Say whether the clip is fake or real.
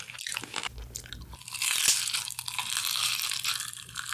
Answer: real